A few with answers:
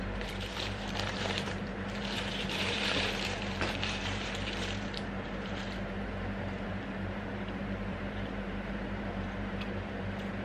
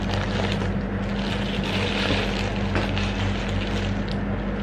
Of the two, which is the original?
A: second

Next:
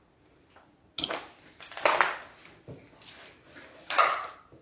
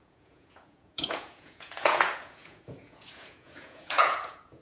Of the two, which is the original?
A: first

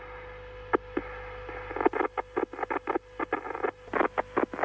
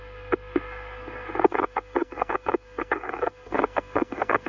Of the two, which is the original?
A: first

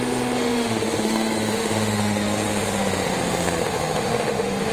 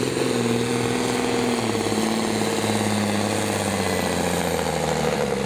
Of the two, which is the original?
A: second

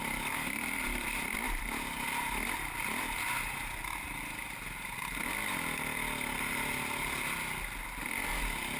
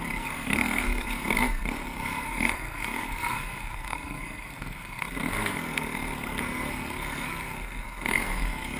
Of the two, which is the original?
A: first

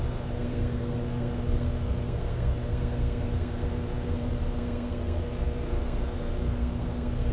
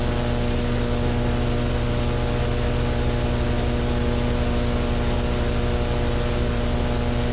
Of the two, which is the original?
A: second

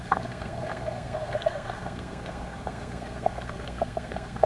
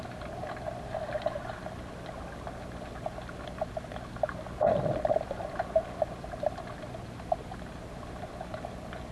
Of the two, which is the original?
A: second